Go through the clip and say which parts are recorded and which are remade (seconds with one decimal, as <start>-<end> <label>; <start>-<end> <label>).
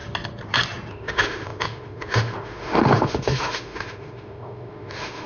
0.0-0.9 recorded; 0.9-5.3 remade